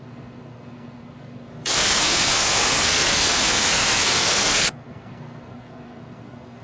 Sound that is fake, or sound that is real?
fake